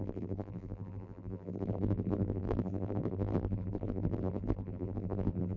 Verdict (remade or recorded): remade